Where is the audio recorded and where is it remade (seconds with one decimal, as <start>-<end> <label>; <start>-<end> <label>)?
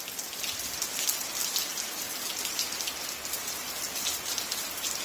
0.0-4.1 recorded; 4.1-5.0 remade